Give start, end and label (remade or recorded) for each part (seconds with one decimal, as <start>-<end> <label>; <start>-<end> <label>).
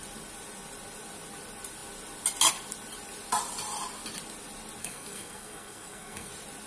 0.0-4.8 recorded; 4.8-6.3 remade; 6.3-6.7 recorded